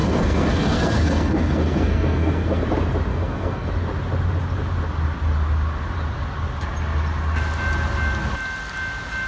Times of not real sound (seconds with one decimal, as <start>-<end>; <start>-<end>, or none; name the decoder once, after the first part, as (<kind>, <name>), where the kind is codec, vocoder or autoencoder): 0.0-2.6 (codec, SNAC); 3.1-3.7